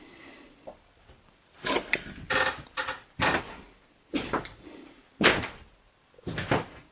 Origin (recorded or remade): remade